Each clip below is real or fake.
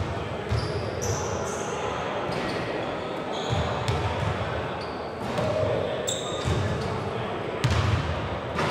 real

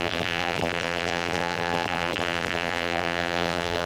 fake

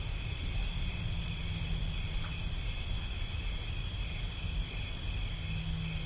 real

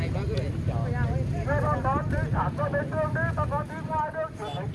real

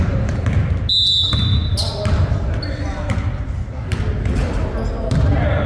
real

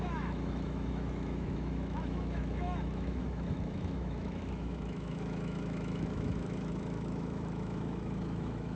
fake